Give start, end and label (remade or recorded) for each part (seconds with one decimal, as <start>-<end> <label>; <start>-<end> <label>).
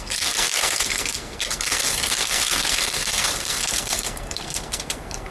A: 0.0-5.3 remade